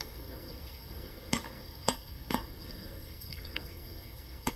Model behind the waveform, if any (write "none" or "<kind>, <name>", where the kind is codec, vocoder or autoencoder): codec, SNAC